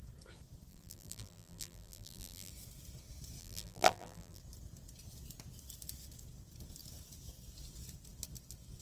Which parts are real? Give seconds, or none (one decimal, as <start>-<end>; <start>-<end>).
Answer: 0.0-0.7; 2.5-3.4; 4.4-8.8